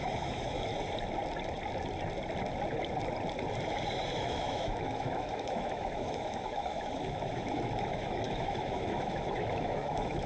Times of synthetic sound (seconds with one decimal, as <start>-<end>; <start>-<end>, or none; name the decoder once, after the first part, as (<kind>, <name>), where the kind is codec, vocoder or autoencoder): 0.0-0.7 (autoencoder, DAC-VAE); 4.2-10.3